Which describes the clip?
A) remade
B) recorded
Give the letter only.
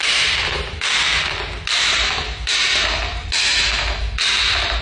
A